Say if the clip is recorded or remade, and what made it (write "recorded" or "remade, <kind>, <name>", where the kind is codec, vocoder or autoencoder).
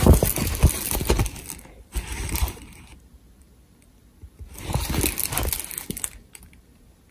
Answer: recorded